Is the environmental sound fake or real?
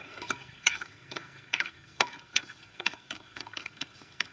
fake